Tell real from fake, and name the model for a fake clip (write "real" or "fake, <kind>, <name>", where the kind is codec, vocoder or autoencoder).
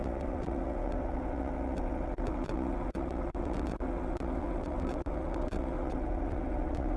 fake, vocoder, WaveNeXt